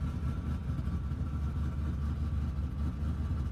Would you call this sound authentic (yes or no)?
yes